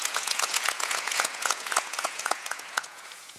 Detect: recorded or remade remade